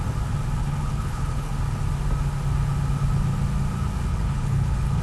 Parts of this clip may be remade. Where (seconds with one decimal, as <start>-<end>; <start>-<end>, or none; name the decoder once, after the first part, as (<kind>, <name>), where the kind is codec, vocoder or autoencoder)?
0.6-1.5 (codec, HILCodec); 4.1-5.0